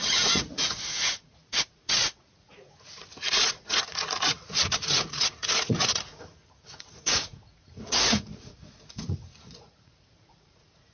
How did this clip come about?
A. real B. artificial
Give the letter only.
B